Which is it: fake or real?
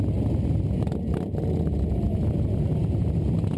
real